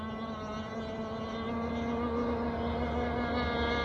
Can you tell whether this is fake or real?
real